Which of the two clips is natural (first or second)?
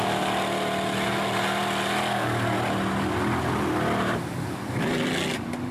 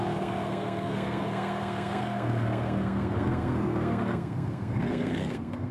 first